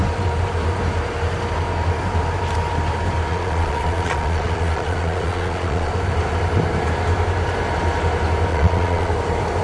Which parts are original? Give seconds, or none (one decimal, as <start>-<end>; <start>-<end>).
0.0-3.3; 5.9-8.5; 9.1-9.6